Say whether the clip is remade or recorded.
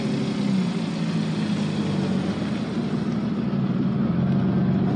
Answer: recorded